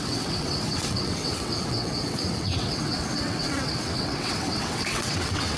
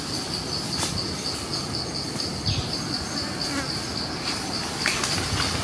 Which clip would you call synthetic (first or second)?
first